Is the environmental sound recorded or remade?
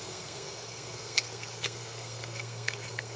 remade